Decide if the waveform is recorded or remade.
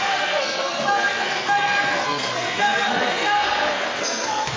remade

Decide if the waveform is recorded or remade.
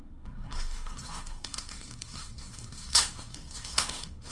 remade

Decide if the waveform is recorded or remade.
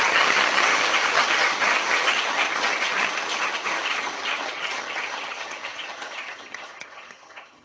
remade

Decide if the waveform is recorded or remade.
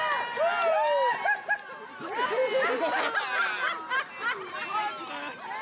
recorded